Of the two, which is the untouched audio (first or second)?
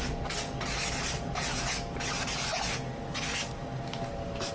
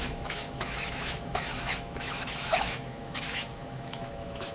first